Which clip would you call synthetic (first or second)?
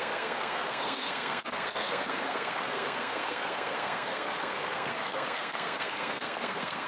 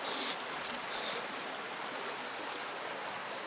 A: first